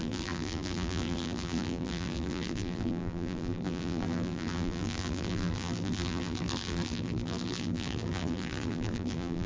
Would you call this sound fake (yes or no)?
yes